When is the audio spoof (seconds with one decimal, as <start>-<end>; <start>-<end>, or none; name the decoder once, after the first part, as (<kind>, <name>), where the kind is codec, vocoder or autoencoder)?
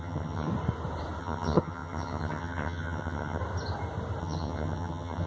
0.0-0.5 (vocoder, HiFi-GAN); 1.2-3.4; 4.2-5.3